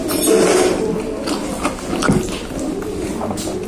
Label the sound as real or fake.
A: real